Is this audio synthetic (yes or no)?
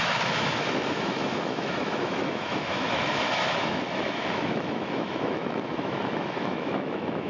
yes